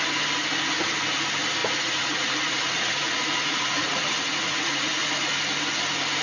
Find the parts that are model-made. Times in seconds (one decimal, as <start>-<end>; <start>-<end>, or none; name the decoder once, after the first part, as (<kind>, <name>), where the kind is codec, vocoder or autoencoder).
1.6-5.3 (vocoder, Vocos)